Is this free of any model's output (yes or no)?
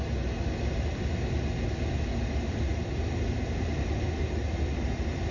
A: yes